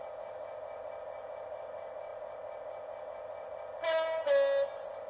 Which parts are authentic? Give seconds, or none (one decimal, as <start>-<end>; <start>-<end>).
0.0-5.1